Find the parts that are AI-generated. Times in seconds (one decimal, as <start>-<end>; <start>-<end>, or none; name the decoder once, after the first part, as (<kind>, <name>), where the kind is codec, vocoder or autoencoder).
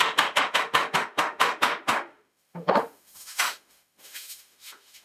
0.0-5.0 (autoencoder, DAC-VAE)